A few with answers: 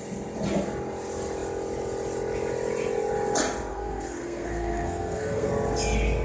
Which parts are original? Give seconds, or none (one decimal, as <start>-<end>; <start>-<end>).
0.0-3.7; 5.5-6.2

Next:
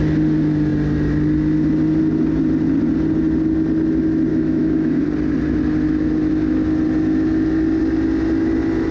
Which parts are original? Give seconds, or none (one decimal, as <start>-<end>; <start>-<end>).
0.0-4.3; 5.0-8.9

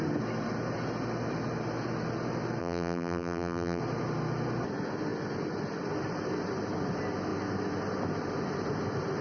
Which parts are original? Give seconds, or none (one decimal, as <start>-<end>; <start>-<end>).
0.0-2.6; 3.8-9.2

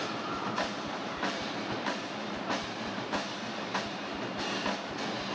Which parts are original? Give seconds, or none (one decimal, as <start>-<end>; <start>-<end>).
0.0-1.0; 3.5-5.3

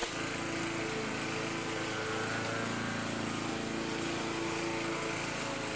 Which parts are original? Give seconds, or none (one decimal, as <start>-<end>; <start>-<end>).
0.0-5.8

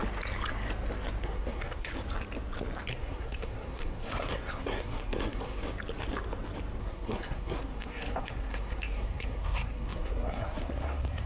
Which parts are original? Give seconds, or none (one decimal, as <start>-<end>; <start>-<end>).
0.0-1.2; 1.9-2.9; 5.6-6.8

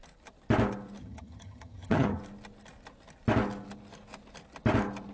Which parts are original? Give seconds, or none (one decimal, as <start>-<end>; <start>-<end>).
0.0-1.0; 2.2-5.1